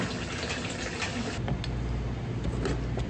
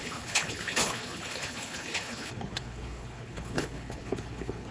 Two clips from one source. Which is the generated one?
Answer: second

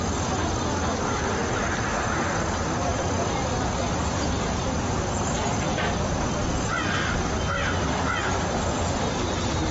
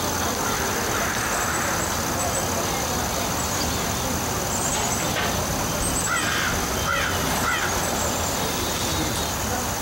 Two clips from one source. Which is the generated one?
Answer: first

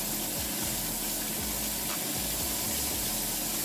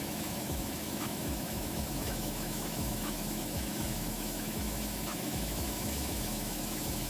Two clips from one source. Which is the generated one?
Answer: second